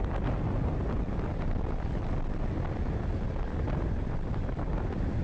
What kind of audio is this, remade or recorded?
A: recorded